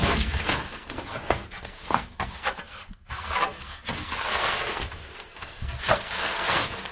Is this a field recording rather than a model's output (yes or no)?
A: no